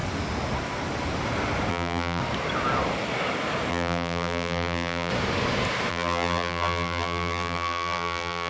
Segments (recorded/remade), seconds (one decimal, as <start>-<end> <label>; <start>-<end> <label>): 0.0-1.7 recorded; 1.7-2.2 remade; 2.2-3.7 recorded; 3.7-5.1 remade; 5.1-5.9 recorded; 5.9-8.5 remade